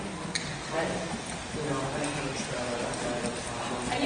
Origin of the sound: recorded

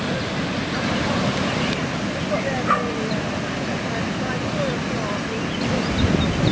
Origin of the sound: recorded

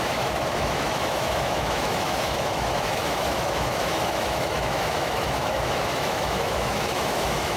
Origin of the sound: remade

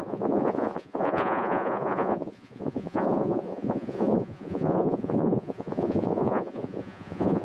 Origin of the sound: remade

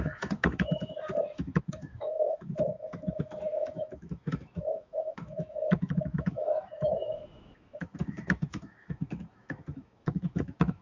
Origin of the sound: remade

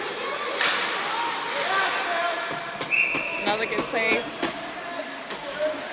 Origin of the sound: recorded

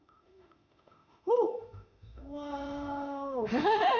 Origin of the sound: remade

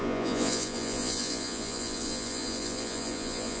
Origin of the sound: remade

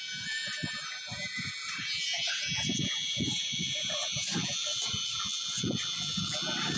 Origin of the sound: remade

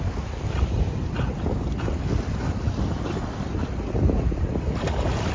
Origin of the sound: recorded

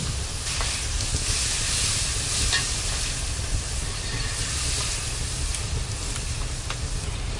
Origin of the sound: recorded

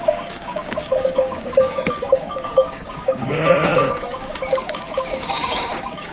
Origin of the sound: remade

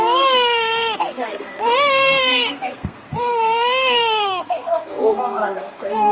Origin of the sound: remade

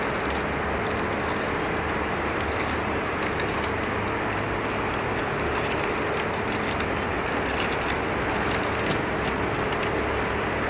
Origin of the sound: recorded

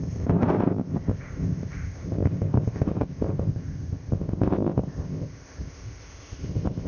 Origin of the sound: remade